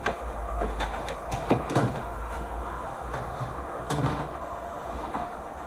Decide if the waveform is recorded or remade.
remade